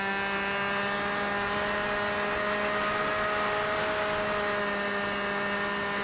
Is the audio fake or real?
real